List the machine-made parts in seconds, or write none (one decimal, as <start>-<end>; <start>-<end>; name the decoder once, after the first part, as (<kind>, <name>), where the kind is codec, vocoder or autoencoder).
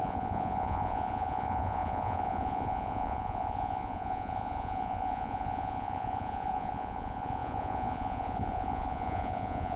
0.0-9.8 (vocoder, Vocos)